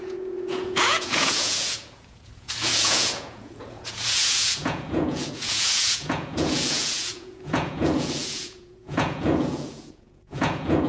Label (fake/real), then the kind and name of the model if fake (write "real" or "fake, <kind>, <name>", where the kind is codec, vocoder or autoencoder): fake, vocoder, Vocos